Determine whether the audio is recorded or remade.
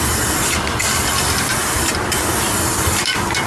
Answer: remade